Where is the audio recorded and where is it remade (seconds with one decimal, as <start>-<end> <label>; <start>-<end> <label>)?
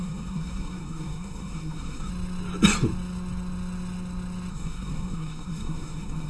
0.0-2.1 remade; 2.1-4.5 recorded; 4.5-6.3 remade